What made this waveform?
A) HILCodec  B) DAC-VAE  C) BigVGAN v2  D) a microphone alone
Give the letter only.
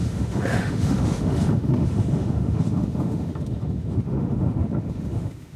B